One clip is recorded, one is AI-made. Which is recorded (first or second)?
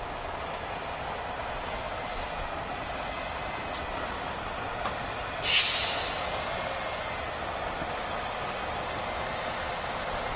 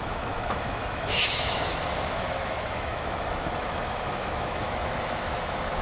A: first